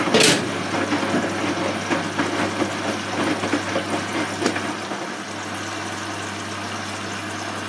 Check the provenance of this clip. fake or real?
real